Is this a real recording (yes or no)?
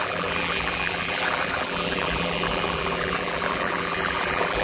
no